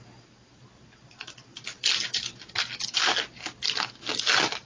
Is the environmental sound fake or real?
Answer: real